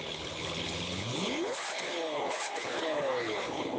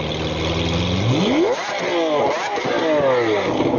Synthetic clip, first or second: first